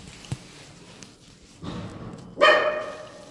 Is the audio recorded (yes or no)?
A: yes